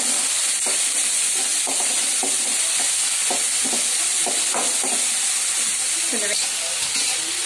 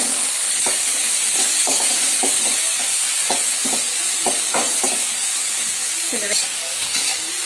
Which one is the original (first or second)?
first